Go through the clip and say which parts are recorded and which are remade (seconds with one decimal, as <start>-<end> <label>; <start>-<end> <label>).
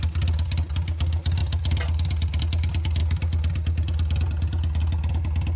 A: 0.0-5.6 recorded